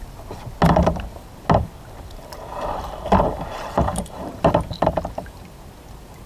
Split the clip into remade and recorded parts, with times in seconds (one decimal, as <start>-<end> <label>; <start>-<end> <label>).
0.0-3.5 recorded; 3.5-4.5 remade; 4.5-6.3 recorded